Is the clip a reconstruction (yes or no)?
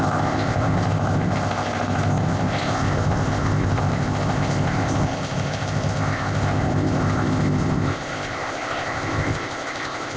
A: yes